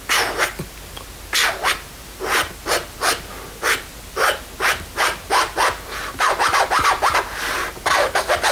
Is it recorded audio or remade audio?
recorded